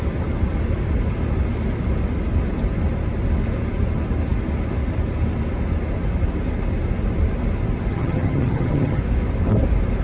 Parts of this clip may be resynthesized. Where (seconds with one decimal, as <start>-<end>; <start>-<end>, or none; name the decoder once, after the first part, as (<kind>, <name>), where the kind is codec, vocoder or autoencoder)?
7.9-9.0 (vocoder, HiFi-GAN)